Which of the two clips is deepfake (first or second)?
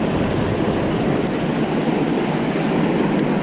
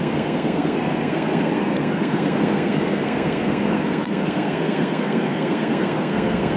second